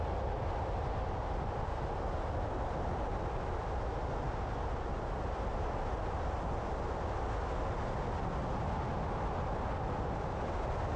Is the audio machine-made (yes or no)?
no